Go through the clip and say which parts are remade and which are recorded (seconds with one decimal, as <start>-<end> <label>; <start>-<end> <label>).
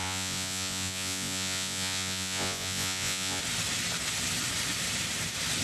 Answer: 0.0-3.4 remade; 3.4-5.6 recorded